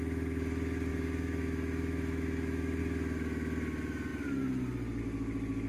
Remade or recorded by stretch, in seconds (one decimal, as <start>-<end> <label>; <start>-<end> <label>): 0.0-0.9 recorded; 0.9-2.8 remade; 2.8-5.7 recorded

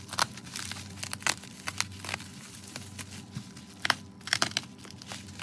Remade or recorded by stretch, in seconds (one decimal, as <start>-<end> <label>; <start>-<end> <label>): 0.0-1.7 recorded; 1.7-3.0 remade; 3.0-5.4 recorded

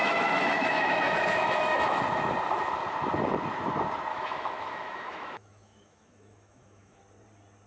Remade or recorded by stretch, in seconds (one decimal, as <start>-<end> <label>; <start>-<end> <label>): 0.0-2.0 remade; 2.0-4.1 recorded; 4.1-7.0 remade; 7.0-7.7 recorded

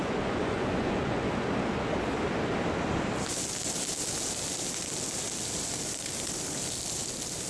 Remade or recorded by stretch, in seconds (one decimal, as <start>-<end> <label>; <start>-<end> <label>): 0.0-1.3 remade; 1.3-7.5 recorded